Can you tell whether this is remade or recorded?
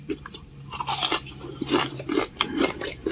remade